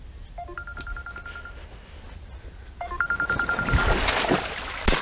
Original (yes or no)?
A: yes